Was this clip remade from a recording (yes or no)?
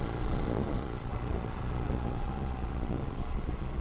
yes